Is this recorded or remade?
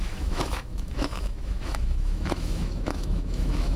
remade